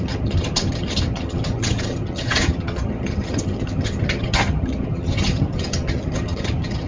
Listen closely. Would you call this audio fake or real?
fake